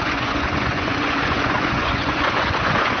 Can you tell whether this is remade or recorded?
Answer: remade